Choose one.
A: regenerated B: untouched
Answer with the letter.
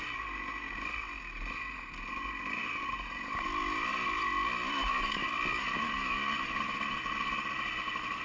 B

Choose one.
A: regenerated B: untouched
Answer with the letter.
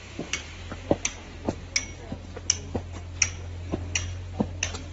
B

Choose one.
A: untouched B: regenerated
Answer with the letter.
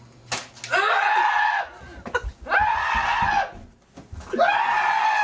A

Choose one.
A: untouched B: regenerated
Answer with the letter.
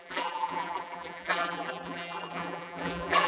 B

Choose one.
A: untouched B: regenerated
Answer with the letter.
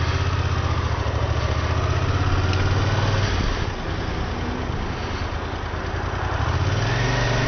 A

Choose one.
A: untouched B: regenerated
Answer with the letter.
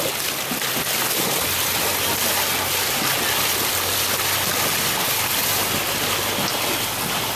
A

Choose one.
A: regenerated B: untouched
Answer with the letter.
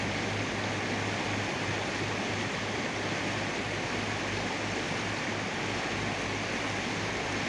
B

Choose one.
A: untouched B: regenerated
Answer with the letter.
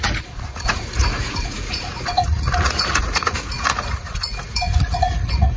B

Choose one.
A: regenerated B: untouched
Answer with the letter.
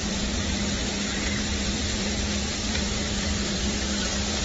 A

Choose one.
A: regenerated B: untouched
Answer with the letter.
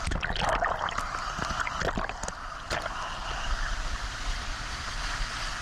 B